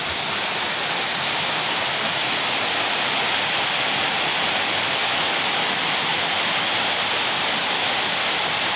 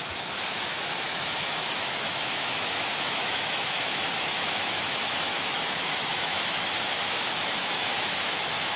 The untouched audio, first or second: first